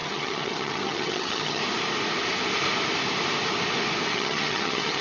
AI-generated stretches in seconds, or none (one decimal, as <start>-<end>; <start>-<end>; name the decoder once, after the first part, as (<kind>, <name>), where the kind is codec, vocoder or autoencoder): 0.0-1.6 (vocoder, HiFi-GAN); 4.1-5.0